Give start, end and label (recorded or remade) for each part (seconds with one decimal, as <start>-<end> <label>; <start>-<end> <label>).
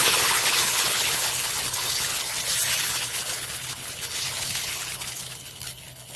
0.0-2.3 remade; 2.3-2.8 recorded; 2.8-6.2 remade